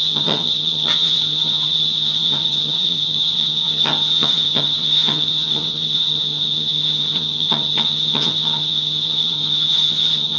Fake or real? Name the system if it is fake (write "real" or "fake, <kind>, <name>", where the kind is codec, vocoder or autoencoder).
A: fake, vocoder, HiFi-GAN